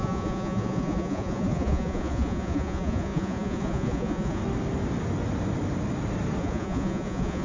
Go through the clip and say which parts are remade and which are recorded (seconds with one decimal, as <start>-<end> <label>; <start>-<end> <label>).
0.0-4.4 remade; 4.4-6.4 recorded; 6.4-7.4 remade